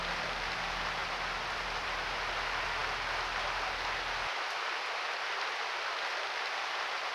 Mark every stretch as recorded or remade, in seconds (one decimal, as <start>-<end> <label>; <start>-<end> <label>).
0.0-1.0 recorded; 1.0-2.3 remade; 2.3-7.1 recorded